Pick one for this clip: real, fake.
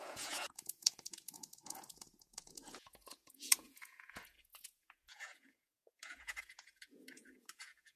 fake